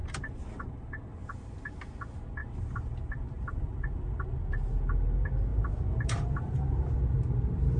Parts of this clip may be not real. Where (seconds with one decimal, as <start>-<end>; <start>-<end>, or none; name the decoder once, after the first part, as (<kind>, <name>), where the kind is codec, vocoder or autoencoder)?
0.0-0.9 (vocoder, BigVGAN v2); 2.4-4.3; 5.5-6.9